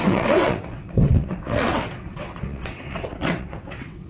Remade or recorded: remade